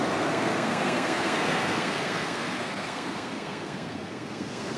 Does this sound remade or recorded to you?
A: remade